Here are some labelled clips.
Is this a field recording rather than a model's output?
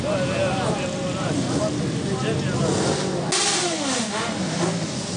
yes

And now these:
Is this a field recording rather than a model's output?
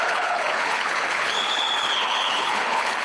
no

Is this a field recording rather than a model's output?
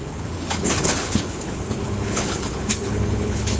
no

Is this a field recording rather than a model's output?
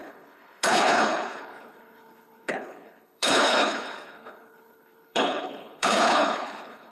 no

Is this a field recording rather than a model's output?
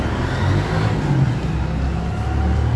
yes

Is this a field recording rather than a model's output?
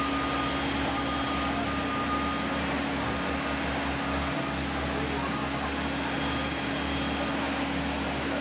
yes